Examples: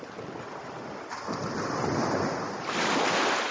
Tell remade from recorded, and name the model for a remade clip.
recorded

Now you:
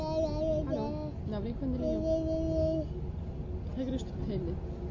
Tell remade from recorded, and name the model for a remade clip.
recorded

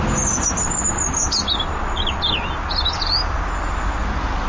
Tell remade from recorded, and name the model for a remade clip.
recorded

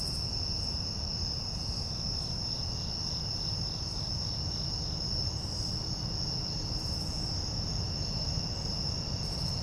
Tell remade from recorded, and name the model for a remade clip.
recorded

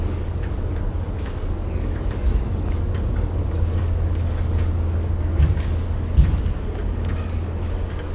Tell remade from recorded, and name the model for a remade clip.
remade, codec, DAC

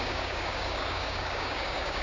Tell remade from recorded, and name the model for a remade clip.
remade, codec, DAC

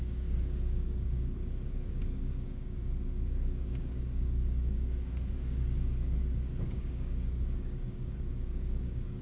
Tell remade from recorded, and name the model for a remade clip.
remade, codec, DAC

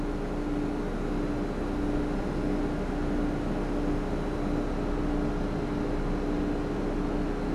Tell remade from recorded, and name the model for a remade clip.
recorded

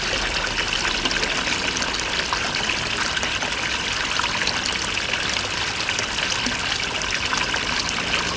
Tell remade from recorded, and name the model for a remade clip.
recorded